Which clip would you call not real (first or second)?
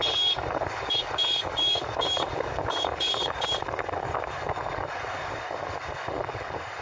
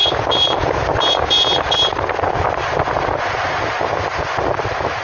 first